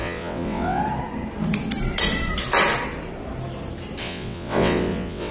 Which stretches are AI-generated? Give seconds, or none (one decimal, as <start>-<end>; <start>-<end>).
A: 0.0-0.8; 4.0-5.3